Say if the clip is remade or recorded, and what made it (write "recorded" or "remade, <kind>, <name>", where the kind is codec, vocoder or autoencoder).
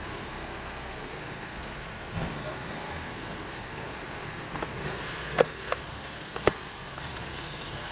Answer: remade, codec, SNAC